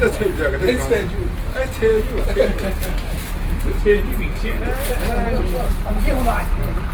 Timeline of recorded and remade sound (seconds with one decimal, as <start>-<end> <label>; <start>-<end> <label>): 0.0-1.9 recorded; 1.9-3.8 remade; 3.8-6.9 recorded